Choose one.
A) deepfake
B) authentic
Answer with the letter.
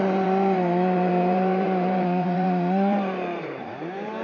A